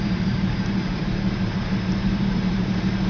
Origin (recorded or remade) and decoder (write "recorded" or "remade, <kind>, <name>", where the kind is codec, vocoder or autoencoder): remade, vocoder, BigVGAN v2